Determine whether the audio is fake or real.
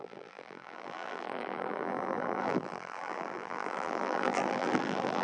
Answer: fake